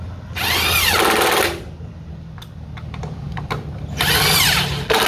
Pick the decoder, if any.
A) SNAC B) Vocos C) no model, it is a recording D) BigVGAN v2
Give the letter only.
C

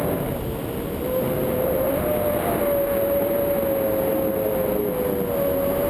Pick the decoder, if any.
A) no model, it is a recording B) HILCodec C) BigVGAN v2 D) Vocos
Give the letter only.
A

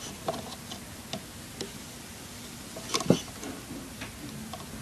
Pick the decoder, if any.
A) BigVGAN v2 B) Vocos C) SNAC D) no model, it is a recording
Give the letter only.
D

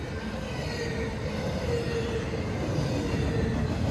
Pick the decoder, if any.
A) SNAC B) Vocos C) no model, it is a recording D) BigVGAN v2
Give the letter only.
C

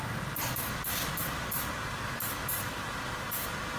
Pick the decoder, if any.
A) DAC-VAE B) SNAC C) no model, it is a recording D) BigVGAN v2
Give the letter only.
C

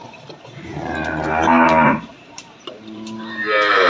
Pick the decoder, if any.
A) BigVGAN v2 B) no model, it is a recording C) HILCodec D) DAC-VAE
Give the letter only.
A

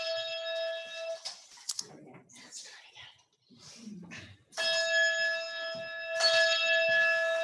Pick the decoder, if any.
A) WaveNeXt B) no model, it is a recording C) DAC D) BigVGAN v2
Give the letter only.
B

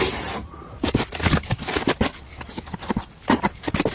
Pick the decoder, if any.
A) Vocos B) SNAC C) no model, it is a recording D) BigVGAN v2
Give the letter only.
C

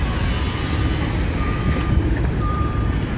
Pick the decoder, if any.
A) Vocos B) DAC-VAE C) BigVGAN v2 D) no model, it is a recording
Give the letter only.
C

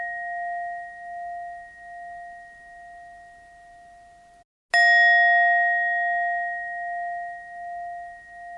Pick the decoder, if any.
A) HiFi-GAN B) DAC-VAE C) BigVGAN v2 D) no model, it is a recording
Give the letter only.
D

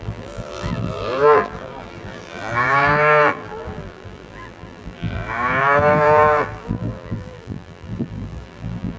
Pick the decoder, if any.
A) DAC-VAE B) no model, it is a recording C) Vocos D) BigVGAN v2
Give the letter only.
D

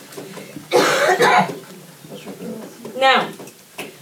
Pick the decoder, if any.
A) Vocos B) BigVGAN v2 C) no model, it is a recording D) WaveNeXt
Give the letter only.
C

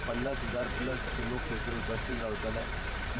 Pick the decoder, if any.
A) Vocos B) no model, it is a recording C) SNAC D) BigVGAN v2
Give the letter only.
D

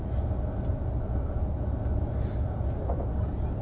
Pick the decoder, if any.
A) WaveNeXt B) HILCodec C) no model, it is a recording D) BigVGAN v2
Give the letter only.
C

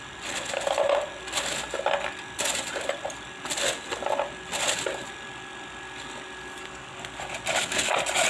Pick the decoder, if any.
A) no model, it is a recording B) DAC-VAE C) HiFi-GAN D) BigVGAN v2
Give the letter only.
A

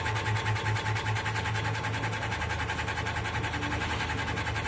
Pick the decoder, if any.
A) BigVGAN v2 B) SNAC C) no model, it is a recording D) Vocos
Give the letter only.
C